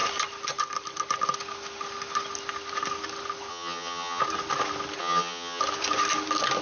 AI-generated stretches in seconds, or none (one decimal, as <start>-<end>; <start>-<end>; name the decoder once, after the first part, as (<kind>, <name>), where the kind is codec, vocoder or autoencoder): 3.5-4.2 (vocoder, HiFi-GAN); 5.0-5.6